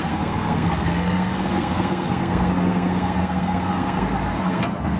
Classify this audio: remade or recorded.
remade